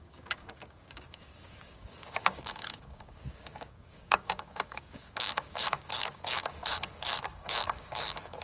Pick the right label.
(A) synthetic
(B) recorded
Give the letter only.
A